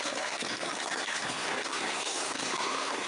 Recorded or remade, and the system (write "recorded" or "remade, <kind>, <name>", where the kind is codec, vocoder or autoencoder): remade, codec, SNAC